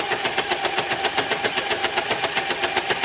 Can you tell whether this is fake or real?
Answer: real